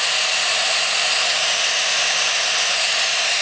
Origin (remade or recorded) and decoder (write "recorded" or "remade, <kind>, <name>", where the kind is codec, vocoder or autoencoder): recorded